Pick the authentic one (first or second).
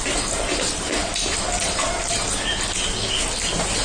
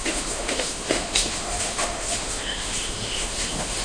first